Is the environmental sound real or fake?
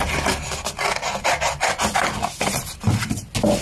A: real